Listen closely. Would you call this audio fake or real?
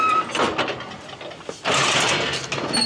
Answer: real